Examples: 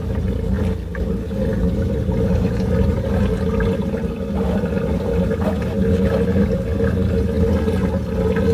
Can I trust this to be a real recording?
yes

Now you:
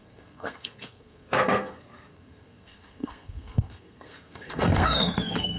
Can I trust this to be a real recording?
no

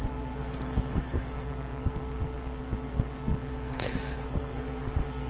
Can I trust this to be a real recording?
no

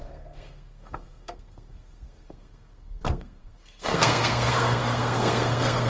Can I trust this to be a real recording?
no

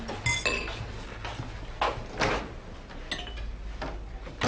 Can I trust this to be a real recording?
yes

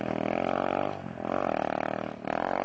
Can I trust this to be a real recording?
yes